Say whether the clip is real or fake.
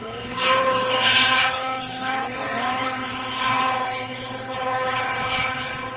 fake